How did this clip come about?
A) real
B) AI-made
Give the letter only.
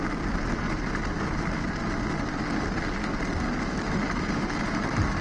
A